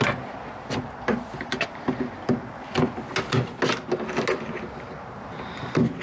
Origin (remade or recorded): recorded